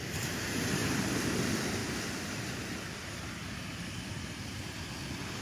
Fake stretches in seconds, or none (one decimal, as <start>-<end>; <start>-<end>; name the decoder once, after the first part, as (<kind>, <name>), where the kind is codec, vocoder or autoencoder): 3.4-3.9 (vocoder, BigVGAN v2)